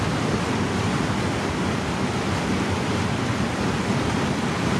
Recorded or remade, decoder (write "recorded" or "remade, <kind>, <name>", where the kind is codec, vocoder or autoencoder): recorded